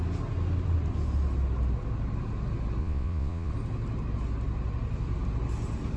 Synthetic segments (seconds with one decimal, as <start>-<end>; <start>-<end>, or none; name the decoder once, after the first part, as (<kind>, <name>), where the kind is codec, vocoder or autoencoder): 2.8-3.5 (vocoder, Vocos)